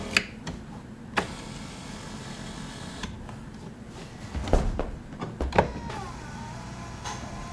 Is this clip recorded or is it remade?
recorded